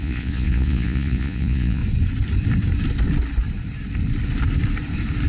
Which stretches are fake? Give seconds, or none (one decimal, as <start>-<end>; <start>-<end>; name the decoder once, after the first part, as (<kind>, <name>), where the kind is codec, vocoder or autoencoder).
0.0-1.8 (vocoder, Vocos)